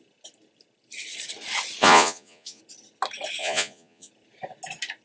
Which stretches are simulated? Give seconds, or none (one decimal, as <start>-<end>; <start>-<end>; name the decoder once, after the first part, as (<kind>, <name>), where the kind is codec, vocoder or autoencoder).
1.8-2.6 (vocoder, Vocos); 3.4-4.1